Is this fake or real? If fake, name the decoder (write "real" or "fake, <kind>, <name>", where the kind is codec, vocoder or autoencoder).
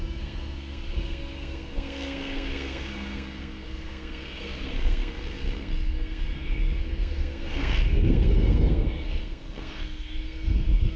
fake, codec, SNAC